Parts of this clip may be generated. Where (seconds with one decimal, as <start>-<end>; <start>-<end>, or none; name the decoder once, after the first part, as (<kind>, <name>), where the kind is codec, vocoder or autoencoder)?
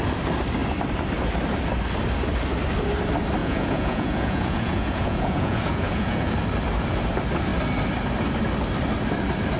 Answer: 3.4-6.3 (vocoder, Vocos)